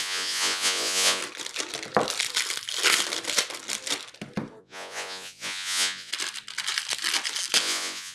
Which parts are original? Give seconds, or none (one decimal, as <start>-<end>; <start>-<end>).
1.2-4.6; 6.1-7.6